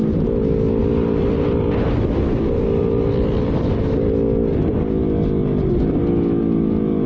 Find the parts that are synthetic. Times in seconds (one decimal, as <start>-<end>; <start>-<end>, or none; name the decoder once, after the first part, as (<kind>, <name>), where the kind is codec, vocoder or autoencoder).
0.8-3.8 (vocoder, BigVGAN v2)